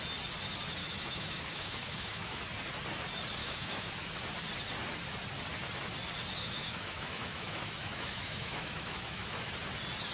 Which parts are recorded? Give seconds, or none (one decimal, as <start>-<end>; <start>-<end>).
0.0-0.8; 2.4-3.4; 3.9-6.4; 9.5-10.1